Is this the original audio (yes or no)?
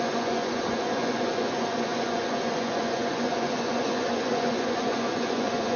no